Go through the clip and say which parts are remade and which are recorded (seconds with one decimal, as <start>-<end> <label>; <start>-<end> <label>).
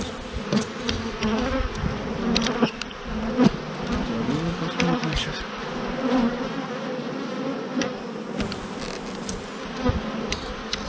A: 0.0-5.0 recorded; 5.0-6.5 remade; 6.5-10.9 recorded